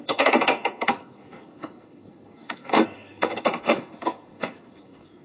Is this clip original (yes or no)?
no